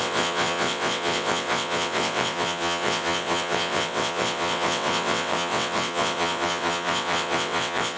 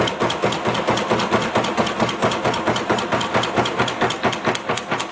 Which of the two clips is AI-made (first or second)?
first